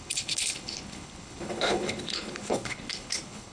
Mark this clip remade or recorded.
remade